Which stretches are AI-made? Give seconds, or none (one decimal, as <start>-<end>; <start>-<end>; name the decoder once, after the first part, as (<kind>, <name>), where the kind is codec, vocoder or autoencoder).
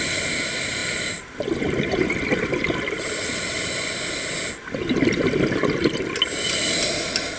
none